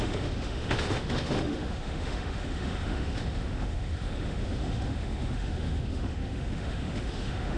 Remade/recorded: remade